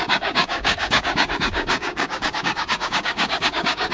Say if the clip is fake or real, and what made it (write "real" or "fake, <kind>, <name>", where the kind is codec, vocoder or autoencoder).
fake, codec, DAC